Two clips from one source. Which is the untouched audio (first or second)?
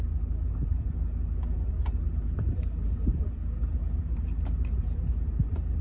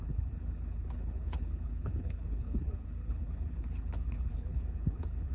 first